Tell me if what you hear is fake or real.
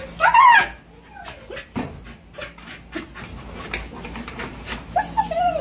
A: real